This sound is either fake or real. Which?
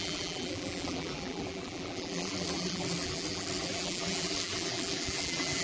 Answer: fake